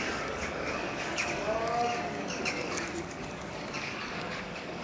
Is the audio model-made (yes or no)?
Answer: yes